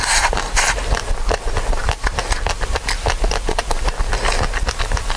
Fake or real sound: real